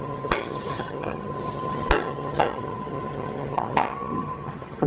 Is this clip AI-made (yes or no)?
yes